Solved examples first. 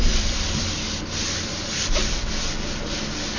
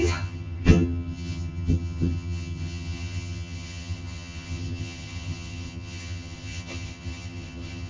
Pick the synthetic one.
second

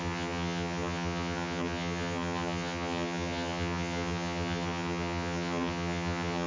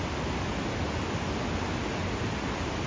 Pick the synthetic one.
first